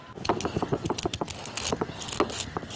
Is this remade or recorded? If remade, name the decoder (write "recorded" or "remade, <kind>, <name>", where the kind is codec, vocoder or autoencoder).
recorded